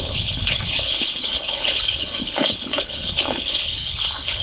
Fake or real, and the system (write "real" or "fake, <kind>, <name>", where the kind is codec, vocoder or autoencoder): fake, codec, HILCodec